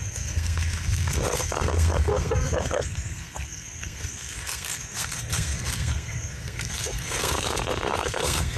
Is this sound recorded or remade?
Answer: remade